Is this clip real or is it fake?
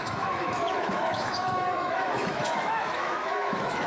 fake